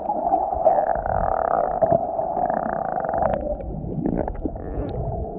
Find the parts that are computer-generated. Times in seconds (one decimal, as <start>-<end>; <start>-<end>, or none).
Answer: 2.9-4.9